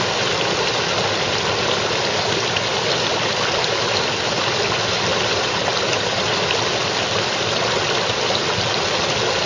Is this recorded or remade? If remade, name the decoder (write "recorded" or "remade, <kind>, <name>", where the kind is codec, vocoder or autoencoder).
recorded